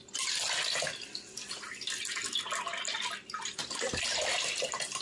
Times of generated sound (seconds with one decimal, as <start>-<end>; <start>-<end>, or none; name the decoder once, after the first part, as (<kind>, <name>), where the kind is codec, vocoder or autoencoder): none